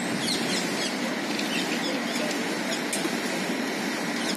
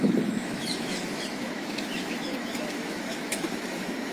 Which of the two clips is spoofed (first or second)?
second